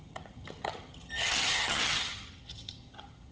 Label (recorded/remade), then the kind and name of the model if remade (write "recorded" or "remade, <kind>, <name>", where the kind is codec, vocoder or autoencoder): remade, vocoder, HiFi-GAN